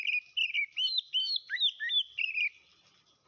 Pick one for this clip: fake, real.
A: real